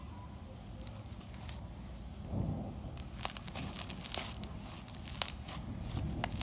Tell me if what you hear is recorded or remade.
recorded